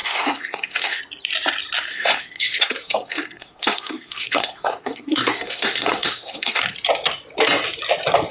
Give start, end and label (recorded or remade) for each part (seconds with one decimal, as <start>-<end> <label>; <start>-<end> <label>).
0.0-1.0 remade; 1.0-1.9 recorded; 1.9-6.6 remade; 6.6-8.3 recorded